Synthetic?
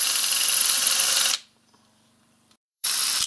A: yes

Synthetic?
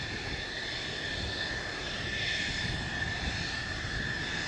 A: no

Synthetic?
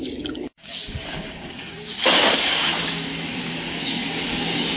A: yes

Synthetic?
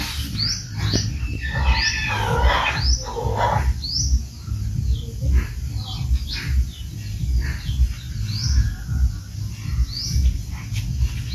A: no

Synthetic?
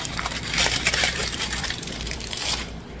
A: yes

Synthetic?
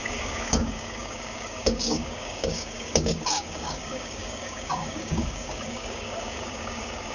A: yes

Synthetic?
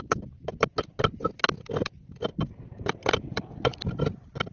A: no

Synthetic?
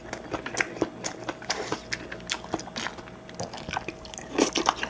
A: no